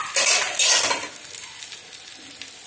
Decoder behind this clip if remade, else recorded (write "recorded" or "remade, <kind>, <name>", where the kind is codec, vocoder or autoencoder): recorded